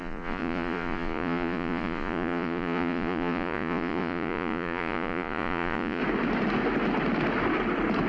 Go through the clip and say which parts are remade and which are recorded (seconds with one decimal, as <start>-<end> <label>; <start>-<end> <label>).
0.0-6.0 remade; 6.0-8.1 recorded